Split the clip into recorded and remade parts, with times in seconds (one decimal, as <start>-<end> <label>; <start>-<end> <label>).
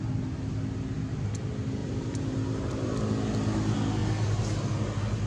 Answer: 0.0-1.8 recorded; 1.8-2.9 remade; 2.9-5.3 recorded